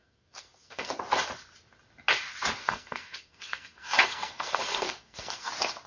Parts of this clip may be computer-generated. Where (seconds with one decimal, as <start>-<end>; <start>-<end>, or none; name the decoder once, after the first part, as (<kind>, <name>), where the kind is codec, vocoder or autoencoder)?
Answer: 0.0-0.9 (codec, SNAC); 2.6-5.5